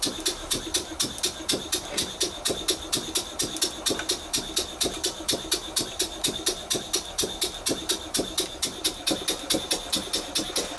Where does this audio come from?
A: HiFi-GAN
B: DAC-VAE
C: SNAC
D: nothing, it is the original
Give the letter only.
D